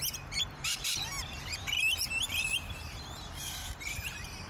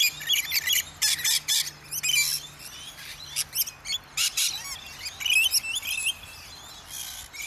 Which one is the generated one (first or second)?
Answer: first